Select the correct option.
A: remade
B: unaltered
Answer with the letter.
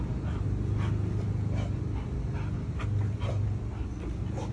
B